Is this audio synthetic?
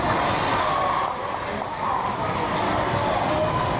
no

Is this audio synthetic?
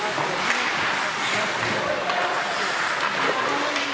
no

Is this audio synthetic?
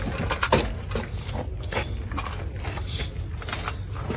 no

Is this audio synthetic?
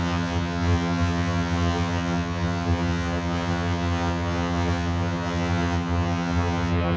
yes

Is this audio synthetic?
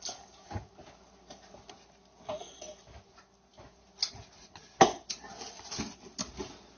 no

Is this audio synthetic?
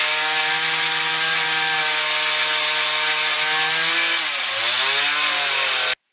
no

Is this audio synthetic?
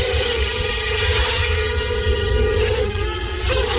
yes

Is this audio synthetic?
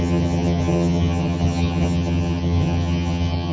yes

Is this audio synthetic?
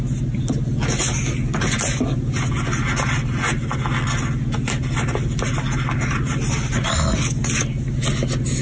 no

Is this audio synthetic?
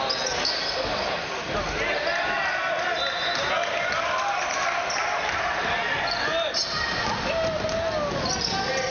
no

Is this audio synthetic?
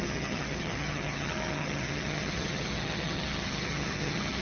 yes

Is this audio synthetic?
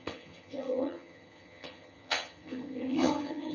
yes